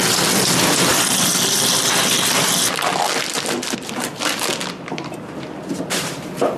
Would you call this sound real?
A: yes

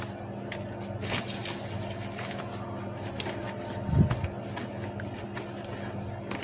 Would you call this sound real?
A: yes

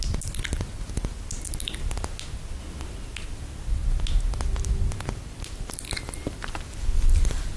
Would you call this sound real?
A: yes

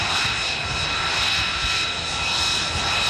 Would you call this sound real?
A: yes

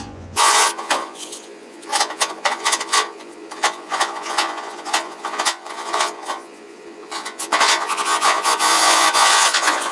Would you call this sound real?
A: no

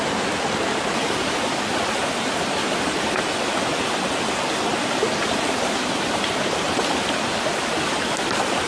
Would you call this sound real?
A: yes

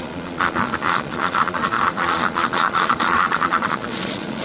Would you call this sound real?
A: no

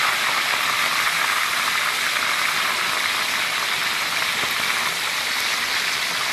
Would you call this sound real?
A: yes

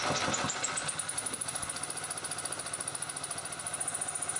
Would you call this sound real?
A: yes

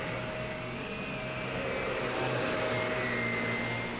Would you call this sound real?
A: yes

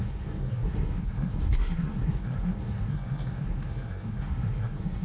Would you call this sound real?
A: no